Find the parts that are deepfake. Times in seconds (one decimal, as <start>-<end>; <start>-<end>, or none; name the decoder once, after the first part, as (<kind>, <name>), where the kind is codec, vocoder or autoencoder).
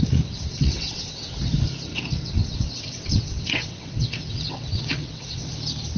0.5-1.3 (vocoder, WaveNeXt); 1.9-5.5